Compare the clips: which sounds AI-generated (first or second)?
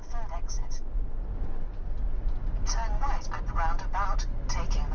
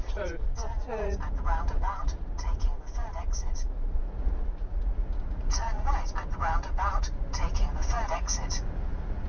second